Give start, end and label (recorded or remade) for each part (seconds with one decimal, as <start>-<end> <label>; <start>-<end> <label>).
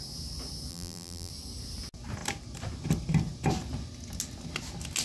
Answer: 0.0-0.7 recorded; 0.7-1.3 remade; 1.3-5.0 recorded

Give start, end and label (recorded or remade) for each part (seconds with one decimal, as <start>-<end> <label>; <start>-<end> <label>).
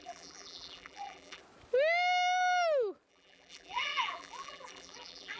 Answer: 0.0-1.4 remade; 1.4-3.1 recorded; 3.1-5.4 remade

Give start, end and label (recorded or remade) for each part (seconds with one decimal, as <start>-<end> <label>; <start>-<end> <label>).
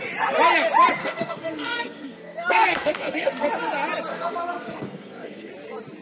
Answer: 0.0-1.0 recorded; 1.0-3.5 remade; 3.5-4.1 recorded; 4.1-5.5 remade; 5.5-6.0 recorded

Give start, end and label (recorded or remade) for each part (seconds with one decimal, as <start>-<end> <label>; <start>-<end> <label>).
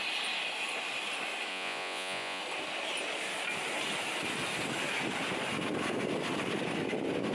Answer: 0.0-1.5 recorded; 1.5-2.4 remade; 2.4-7.3 recorded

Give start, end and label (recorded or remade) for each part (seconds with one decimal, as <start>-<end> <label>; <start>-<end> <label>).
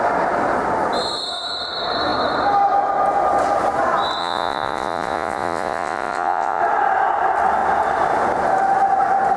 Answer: 0.0-4.2 recorded; 4.2-6.6 remade; 6.6-9.4 recorded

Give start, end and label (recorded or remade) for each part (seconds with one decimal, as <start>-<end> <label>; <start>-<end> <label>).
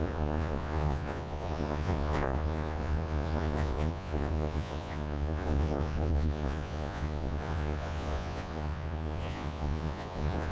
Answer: 0.0-10.5 remade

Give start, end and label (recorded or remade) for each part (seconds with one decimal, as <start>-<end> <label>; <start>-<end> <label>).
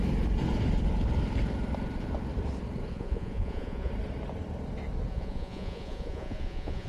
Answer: 0.0-2.9 recorded; 2.9-3.9 remade; 3.9-5.1 recorded; 5.1-6.9 remade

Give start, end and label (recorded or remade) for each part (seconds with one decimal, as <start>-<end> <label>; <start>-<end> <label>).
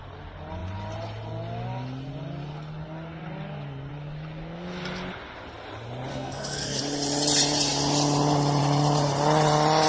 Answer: 0.0-6.1 recorded; 6.1-6.8 remade; 6.8-9.9 recorded